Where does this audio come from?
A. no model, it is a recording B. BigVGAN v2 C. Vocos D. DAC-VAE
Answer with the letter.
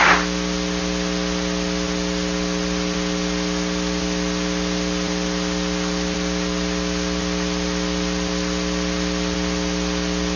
A